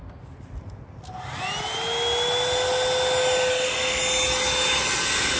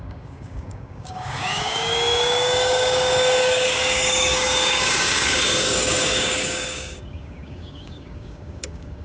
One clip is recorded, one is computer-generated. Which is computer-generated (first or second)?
second